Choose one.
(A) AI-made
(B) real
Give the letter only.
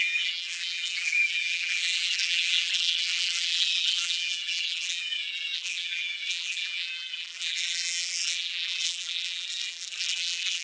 A